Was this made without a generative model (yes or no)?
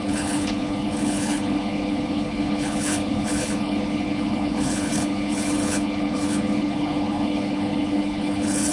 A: no